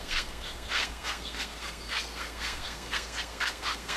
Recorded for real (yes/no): no